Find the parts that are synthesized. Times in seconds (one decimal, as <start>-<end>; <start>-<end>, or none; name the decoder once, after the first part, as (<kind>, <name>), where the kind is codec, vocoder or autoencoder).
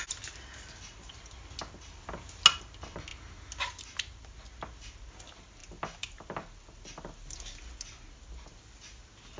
none